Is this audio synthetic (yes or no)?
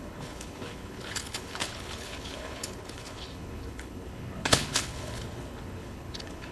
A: yes